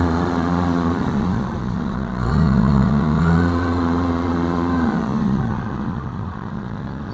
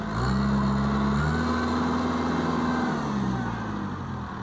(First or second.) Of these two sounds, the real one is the second